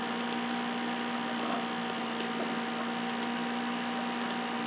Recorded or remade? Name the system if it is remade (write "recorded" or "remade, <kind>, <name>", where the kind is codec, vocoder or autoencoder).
recorded